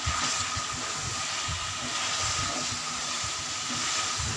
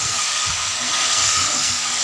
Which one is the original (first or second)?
first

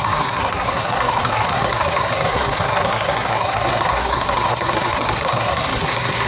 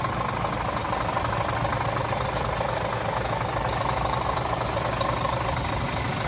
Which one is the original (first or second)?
second